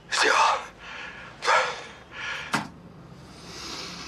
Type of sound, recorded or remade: recorded